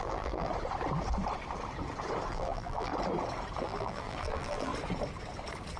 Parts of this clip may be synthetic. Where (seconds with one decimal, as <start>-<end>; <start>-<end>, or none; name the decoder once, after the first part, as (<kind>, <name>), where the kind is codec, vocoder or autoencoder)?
0.0-0.5 (vocoder, BigVGAN v2); 2.3-2.9; 3.6-4.7